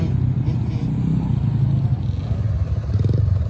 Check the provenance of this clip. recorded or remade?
recorded